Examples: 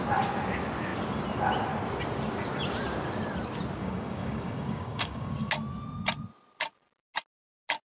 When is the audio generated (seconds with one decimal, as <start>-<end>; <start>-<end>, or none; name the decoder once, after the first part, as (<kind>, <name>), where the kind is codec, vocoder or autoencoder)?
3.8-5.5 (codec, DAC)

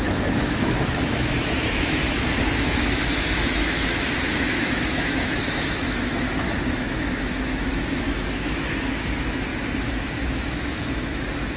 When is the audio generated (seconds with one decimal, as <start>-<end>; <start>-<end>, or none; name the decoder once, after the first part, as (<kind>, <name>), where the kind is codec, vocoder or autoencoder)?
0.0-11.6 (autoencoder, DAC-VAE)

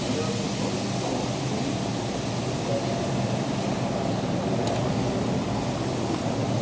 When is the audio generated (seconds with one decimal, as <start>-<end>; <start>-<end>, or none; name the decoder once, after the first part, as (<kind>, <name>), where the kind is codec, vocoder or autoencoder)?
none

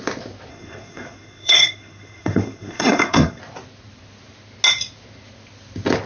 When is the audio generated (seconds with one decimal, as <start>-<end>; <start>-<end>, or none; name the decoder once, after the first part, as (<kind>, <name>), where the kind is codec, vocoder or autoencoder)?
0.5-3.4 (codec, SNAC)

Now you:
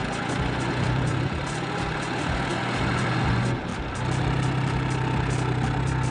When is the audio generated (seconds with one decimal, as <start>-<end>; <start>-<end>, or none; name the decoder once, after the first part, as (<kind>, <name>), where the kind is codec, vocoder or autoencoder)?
0.0-3.7 (vocoder, Vocos)